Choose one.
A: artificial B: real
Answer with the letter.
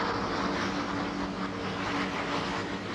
B